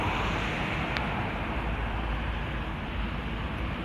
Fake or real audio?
fake